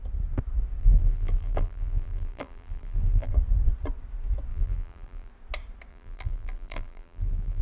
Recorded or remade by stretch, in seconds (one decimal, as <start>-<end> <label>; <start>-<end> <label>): 0.0-0.8 recorded; 0.8-3.3 remade; 3.3-4.5 recorded; 4.5-5.3 remade; 5.3-5.9 recorded; 5.9-7.6 remade